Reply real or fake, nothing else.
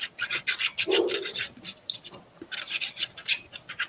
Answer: real